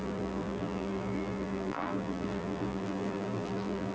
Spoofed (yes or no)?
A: yes